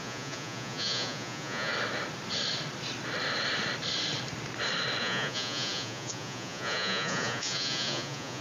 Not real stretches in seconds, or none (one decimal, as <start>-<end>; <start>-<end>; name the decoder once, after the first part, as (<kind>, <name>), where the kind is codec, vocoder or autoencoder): 0.0-1.7 (vocoder, Vocos); 5.0-8.4